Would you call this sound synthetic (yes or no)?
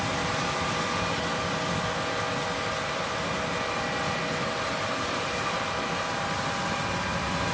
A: no